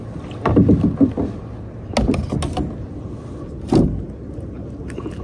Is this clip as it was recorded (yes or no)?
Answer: yes